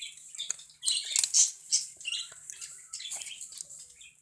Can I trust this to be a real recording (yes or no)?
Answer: yes